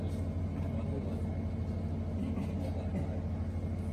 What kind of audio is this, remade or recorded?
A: recorded